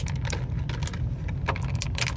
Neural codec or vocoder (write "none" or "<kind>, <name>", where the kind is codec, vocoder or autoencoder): none